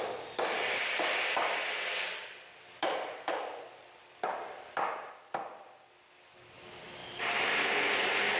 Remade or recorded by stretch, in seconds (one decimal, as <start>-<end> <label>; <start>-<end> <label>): 0.0-7.0 recorded; 7.0-7.7 remade; 7.7-8.4 recorded